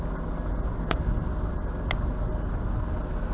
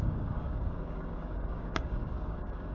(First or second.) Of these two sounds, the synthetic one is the second